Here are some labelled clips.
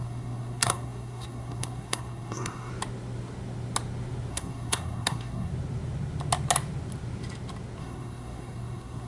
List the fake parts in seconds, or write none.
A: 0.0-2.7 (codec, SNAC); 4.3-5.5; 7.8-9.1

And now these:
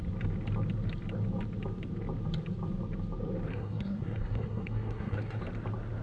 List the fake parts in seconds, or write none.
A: 3.5-5.4 (codec, SNAC)

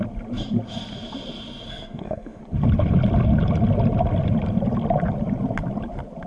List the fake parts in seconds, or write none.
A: 1.7-2.4 (codec, SNAC)

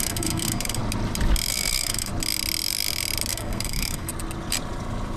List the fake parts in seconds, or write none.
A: 0.0-0.8 (codec, SNAC); 1.5-2.1; 3.3-4.1